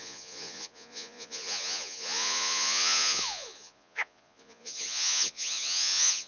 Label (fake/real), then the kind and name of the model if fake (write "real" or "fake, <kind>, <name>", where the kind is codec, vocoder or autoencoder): fake, vocoder, Vocos